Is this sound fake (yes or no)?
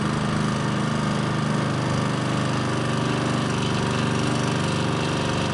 no